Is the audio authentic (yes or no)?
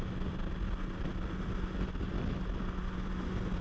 yes